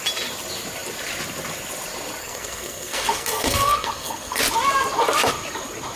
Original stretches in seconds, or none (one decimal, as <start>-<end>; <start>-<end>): 0.0-2.2; 4.4-6.0